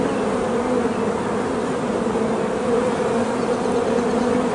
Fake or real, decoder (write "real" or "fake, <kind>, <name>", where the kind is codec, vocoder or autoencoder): real